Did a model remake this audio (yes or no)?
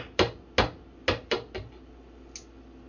no